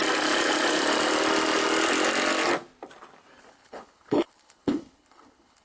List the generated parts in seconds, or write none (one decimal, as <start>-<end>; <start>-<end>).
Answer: 3.4-5.6